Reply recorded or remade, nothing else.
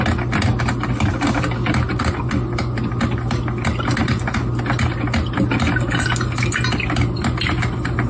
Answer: recorded